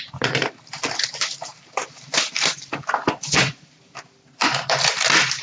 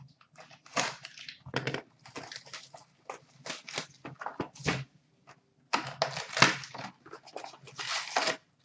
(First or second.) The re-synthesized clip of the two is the first